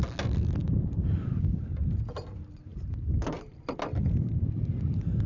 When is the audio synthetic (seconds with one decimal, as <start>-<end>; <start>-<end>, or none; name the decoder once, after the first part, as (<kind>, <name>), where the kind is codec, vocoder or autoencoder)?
none